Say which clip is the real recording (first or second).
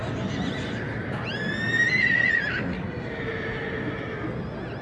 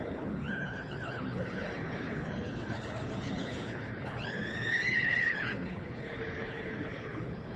first